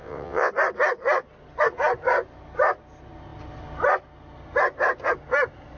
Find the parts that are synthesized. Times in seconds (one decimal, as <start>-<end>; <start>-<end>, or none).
0.0-0.5